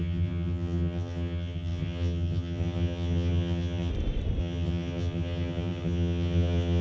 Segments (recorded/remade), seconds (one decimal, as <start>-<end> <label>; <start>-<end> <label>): 0.0-3.9 remade; 3.9-4.4 recorded; 4.4-6.8 remade